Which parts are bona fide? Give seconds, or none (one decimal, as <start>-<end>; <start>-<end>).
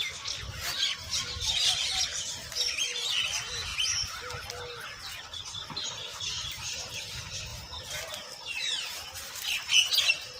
0.0-10.4